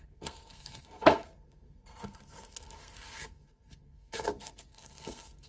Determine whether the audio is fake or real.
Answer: fake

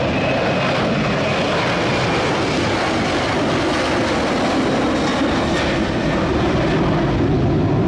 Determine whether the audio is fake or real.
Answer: real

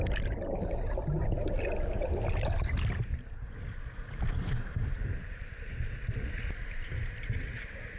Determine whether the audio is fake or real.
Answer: real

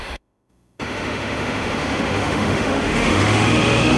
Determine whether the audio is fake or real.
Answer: fake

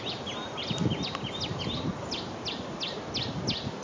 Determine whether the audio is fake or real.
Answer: real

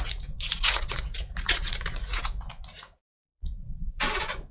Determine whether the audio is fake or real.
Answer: fake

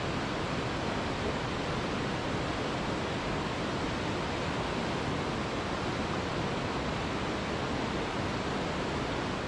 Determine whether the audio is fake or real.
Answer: real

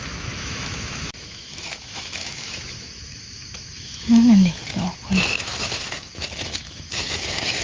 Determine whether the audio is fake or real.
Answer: fake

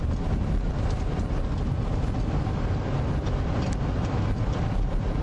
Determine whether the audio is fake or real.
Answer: real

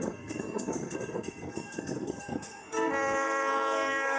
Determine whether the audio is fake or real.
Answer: fake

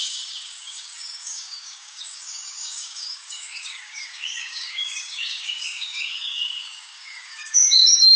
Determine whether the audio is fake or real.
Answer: fake